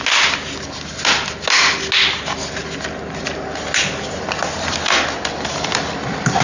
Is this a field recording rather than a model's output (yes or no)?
yes